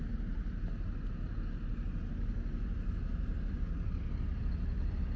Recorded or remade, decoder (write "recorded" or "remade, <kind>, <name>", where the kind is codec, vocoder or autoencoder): recorded